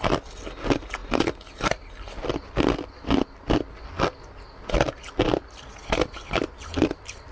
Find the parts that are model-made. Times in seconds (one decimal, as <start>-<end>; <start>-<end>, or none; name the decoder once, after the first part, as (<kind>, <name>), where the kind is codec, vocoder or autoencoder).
none